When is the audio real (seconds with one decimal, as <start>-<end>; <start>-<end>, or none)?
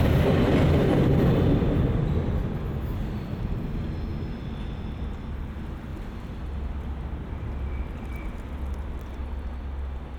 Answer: 0.0-10.2